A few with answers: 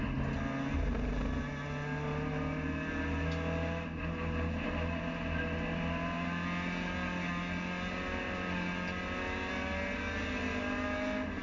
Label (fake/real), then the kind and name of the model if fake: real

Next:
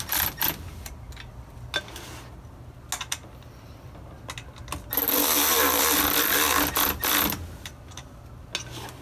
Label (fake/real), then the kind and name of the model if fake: real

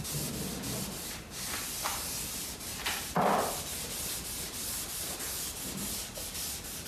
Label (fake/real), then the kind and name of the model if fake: real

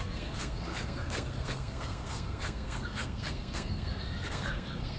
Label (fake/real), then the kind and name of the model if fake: fake, codec, SNAC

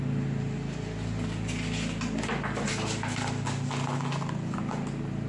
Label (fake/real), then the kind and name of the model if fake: real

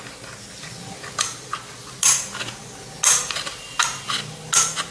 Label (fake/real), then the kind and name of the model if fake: real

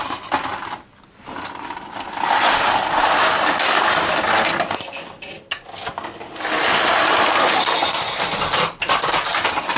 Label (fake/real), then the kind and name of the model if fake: real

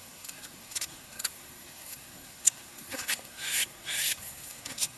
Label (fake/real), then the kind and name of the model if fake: fake, codec, SNAC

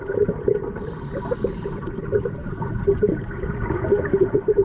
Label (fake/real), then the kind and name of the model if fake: real